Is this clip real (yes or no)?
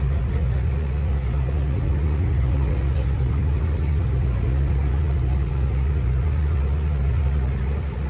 no